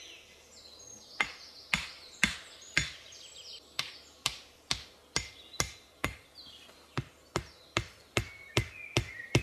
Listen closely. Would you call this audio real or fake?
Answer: real